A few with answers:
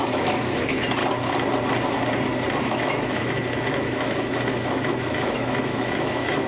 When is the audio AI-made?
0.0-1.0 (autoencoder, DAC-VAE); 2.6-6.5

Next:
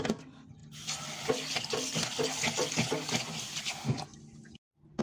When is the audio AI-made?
none

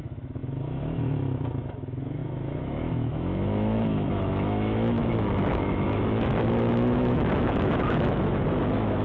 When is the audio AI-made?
0.0-9.0 (autoencoder, DAC-VAE)

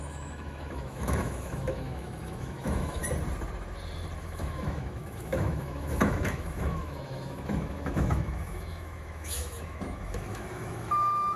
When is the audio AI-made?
0.0-3.0 (autoencoder, DAC-VAE); 4.2-11.4